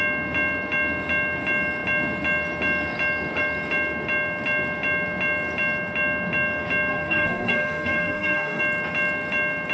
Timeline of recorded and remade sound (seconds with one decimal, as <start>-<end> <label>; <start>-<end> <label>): 0.0-6.9 recorded; 6.9-8.6 remade; 8.6-9.7 recorded